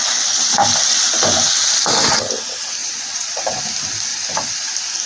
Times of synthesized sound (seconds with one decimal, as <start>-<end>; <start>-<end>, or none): 2.8-3.6